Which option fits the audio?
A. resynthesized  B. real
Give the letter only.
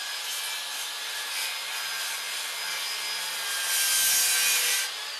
B